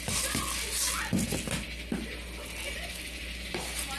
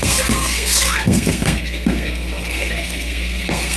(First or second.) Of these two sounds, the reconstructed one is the second